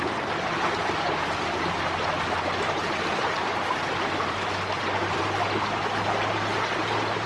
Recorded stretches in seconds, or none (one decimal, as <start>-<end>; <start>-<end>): 0.0-2.8; 5.2-7.3